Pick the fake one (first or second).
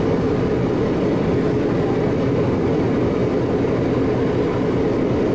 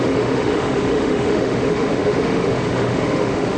second